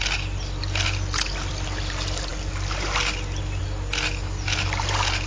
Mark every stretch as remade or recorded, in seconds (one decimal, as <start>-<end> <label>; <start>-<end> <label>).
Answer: 0.0-5.3 recorded

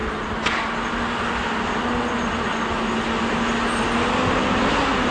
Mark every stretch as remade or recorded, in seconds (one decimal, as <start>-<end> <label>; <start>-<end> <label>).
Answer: 0.0-5.1 recorded

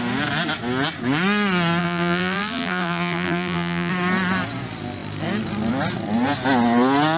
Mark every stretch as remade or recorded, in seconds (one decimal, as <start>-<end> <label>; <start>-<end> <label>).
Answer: 0.0-1.8 recorded; 1.8-3.9 remade; 3.9-7.2 recorded

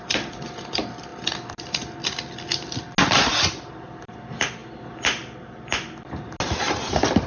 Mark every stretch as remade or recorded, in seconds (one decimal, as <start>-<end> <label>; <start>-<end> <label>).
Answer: 0.0-7.3 recorded

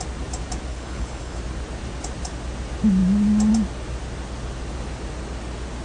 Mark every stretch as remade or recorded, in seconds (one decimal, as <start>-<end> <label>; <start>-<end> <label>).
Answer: 0.0-0.7 recorded; 0.7-1.4 remade; 1.4-5.8 recorded

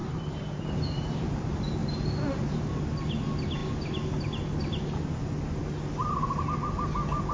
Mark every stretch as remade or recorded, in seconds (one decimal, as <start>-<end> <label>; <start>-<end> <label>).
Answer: 0.0-1.3 remade; 1.3-1.8 recorded; 1.8-2.8 remade; 2.8-7.3 recorded

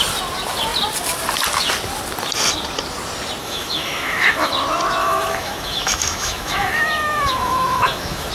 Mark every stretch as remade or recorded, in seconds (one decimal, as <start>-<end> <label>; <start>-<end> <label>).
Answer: 0.0-3.4 recorded; 3.4-4.5 remade; 4.5-5.0 recorded; 5.0-8.3 remade